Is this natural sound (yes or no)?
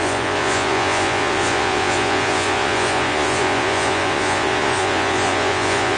no